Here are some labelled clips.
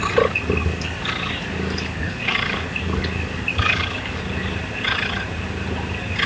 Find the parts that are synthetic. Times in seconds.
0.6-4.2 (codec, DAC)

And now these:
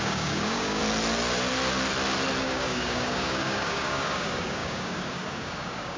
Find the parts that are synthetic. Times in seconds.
0.0-0.8 (codec, DAC); 2.4-6.0

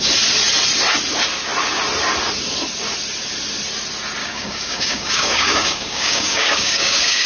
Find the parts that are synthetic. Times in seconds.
4.2-7.3 (codec, DAC)

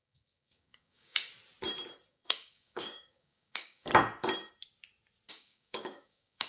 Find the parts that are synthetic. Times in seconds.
0.0-1.3 (codec, DAC); 2.1-3.9; 5.3-6.5

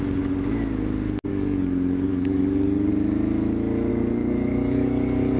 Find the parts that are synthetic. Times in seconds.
1.3-2.9 (codec, DAC); 3.9-5.4

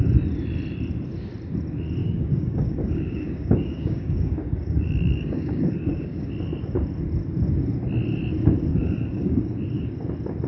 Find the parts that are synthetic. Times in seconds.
2.0-6.3 (codec, DAC); 8.7-9.9

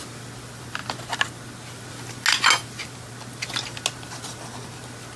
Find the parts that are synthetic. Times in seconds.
none